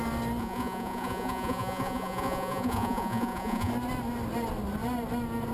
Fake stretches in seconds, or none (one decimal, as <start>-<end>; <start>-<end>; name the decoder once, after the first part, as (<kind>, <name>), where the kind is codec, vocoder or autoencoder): 0.4-3.7 (vocoder, Vocos)